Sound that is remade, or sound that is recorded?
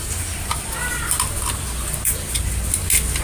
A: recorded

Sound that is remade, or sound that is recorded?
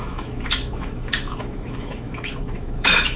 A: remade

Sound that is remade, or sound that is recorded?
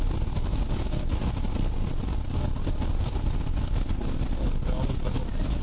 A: recorded